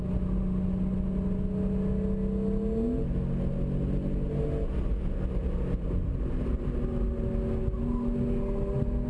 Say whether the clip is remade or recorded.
recorded